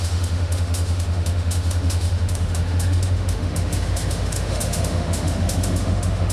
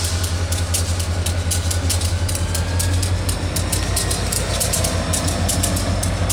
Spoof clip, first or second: first